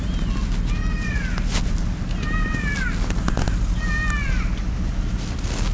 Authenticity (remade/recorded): recorded